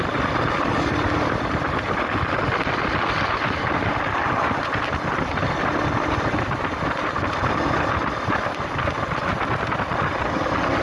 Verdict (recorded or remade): recorded